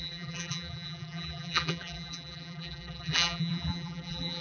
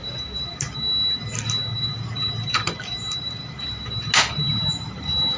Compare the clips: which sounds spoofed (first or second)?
first